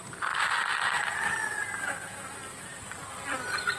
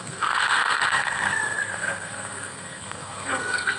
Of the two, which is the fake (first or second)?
second